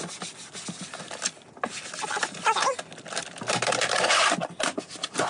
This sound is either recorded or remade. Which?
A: recorded